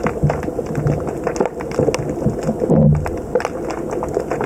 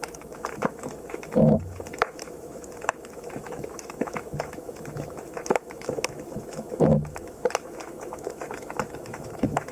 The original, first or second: first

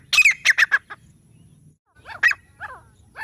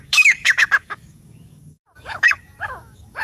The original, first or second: first